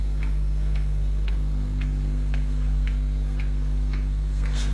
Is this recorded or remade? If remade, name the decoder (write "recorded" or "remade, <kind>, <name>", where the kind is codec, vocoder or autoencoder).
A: remade, codec, SNAC